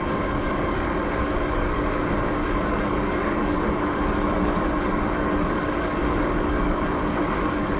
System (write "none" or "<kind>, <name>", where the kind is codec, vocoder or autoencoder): codec, DAC